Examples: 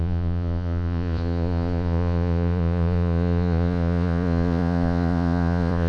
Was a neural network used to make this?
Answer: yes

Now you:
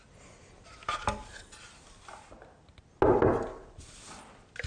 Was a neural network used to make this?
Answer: no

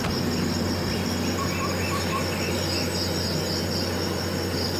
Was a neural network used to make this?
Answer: no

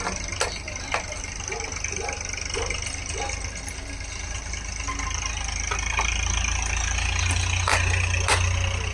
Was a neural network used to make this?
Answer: no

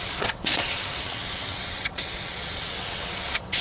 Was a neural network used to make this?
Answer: yes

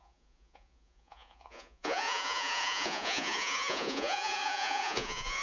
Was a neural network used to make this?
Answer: yes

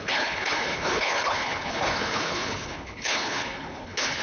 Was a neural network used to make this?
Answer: yes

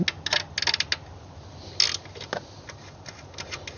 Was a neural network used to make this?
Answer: no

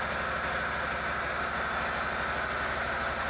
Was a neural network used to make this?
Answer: no